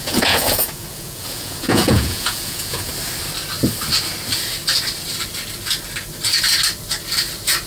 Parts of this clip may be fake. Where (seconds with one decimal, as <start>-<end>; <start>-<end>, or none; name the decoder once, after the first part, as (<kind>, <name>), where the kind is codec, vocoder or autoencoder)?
0.0-2.9 (vocoder, Vocos)